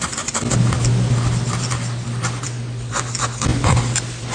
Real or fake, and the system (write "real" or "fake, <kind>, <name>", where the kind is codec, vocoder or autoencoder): real